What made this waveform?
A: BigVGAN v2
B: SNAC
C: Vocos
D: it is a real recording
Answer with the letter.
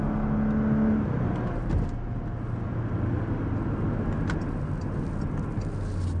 D